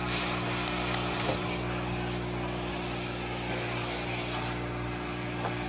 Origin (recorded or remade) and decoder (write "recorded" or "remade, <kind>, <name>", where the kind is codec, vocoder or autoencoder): recorded